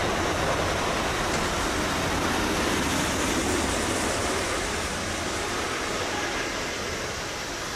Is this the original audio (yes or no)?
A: yes